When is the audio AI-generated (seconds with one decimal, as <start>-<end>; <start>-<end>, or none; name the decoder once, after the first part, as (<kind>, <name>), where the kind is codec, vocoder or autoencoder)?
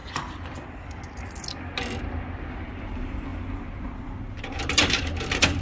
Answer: 2.5-5.6 (vocoder, BigVGAN v2)